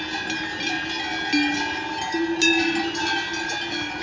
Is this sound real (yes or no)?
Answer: yes